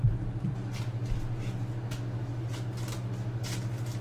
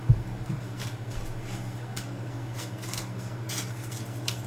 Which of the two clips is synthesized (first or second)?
second